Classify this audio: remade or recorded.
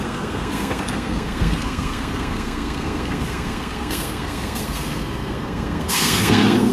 remade